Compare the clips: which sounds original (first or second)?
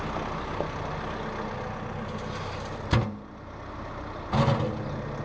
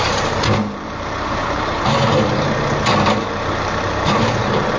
first